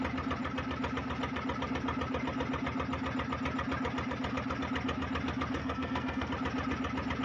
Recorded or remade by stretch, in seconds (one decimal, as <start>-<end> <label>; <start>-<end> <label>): 0.0-5.6 recorded; 5.6-6.3 remade; 6.3-7.2 recorded